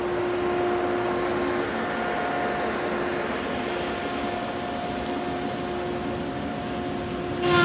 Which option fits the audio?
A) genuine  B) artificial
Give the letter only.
A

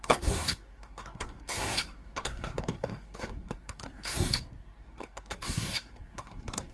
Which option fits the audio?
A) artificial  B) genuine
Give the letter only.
A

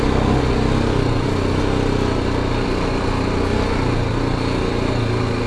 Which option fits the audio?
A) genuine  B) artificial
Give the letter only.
A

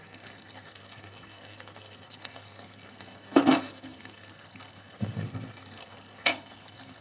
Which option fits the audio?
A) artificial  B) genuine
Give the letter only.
A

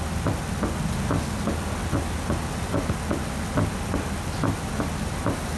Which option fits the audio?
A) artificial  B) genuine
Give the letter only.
B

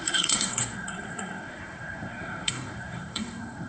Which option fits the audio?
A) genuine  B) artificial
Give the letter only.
B